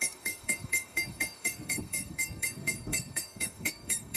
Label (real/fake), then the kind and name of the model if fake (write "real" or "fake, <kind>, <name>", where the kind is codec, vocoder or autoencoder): fake, codec, SNAC